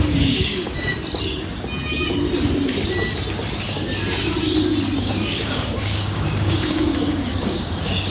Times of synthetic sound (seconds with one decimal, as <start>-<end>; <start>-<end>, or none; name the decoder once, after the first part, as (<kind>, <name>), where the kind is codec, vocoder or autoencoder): 0.0-0.9 (codec, DAC); 5.0-8.1